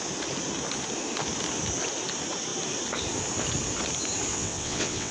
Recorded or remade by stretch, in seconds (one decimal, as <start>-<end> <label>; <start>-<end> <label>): 0.0-4.3 recorded; 4.3-5.1 remade